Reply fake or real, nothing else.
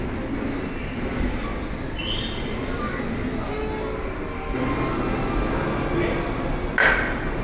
real